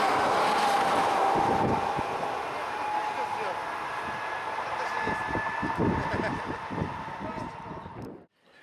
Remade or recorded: recorded